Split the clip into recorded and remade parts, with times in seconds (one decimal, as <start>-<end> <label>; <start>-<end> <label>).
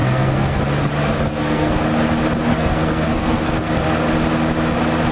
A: 0.0-0.6 remade; 0.6-1.3 recorded; 1.3-1.8 remade; 1.8-2.5 recorded; 2.5-3.7 remade; 3.7-5.1 recorded